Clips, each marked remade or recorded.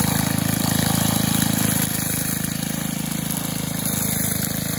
remade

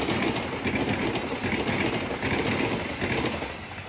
recorded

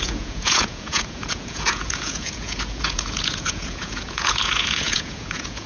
remade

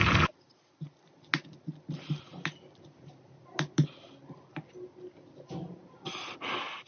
recorded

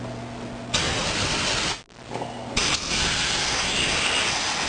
recorded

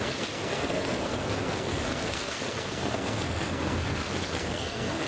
remade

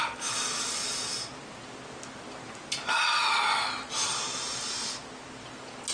recorded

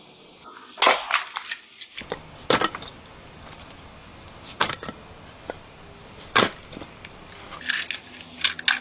recorded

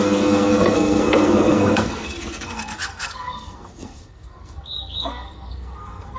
remade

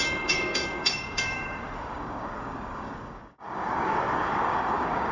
remade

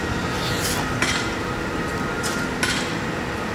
recorded